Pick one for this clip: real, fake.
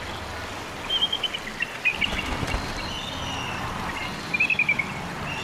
real